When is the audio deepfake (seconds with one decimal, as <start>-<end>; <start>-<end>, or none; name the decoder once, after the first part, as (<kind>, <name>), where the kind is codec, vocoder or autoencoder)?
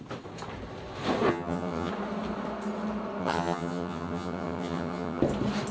1.3-1.9 (vocoder, HiFi-GAN); 3.2-5.2